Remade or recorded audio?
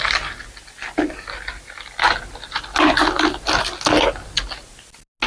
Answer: recorded